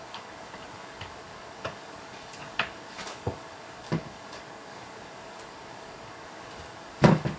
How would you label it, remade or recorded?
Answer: remade